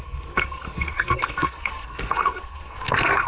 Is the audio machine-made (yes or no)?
yes